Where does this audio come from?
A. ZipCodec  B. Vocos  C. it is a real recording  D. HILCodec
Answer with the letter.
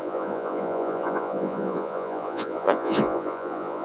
B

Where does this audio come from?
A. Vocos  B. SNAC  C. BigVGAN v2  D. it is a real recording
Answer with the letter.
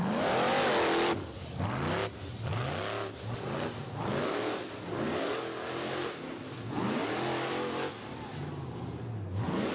D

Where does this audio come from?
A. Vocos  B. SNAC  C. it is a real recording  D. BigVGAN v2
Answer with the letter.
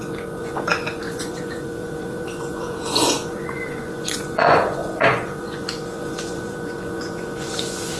A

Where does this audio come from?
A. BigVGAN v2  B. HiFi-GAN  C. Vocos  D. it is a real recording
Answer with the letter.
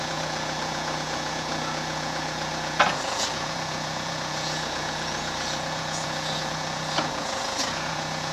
C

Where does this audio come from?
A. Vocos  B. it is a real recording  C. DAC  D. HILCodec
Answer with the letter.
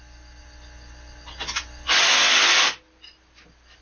B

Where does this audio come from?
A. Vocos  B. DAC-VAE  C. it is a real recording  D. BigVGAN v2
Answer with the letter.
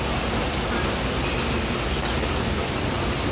C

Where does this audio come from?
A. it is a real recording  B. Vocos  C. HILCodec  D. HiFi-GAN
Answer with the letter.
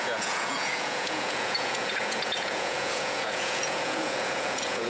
B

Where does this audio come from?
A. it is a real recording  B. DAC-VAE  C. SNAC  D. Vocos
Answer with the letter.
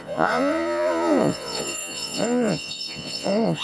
D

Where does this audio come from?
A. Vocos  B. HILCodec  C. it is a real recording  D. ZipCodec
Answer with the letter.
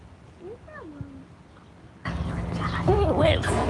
C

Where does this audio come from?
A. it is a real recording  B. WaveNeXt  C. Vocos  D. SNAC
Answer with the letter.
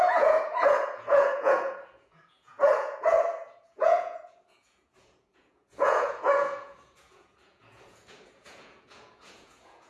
C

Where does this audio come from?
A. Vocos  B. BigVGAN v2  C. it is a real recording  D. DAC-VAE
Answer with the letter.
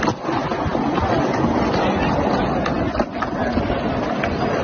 C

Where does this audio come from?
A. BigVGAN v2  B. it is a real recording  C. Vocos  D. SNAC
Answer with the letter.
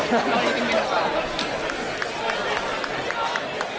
B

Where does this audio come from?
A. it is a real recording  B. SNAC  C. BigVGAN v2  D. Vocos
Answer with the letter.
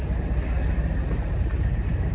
A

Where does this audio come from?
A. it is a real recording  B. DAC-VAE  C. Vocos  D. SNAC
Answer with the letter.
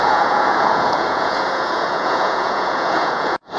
C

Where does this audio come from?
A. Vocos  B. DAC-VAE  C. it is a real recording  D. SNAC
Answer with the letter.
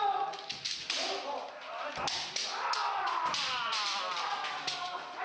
C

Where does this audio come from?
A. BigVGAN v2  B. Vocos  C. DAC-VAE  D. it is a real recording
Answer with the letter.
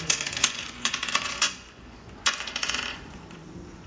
B